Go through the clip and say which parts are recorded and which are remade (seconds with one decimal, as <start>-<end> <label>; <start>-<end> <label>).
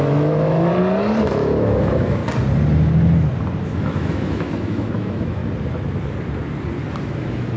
0.0-0.7 remade; 0.7-1.2 recorded; 1.2-2.2 remade; 2.2-3.6 recorded; 3.6-5.4 remade; 5.4-7.0 recorded; 7.0-7.6 remade